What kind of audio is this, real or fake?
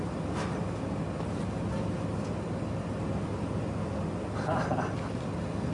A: real